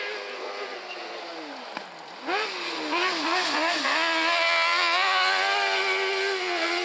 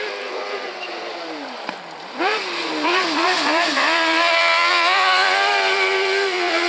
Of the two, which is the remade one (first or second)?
second